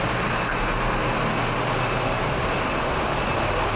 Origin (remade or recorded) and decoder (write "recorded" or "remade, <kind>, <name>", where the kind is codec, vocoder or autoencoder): recorded